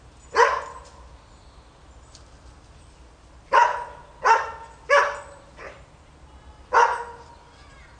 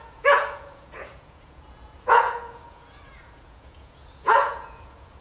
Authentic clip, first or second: first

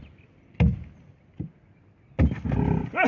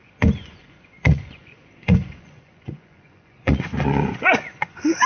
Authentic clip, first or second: first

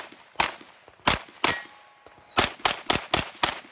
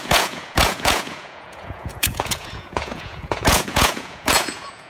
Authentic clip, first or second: first